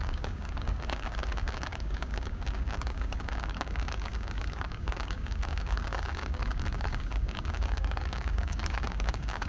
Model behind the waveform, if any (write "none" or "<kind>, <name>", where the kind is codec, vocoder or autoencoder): codec, DAC